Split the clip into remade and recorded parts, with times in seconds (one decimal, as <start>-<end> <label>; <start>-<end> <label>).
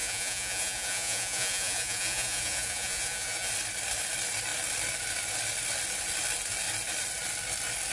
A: 0.0-3.5 remade; 3.5-7.9 recorded